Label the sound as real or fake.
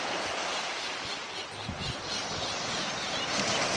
real